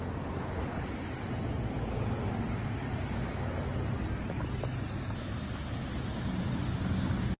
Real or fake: real